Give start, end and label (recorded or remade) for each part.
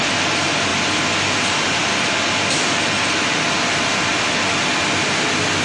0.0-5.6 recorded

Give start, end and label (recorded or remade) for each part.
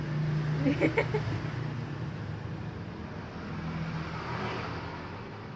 0.0-5.6 recorded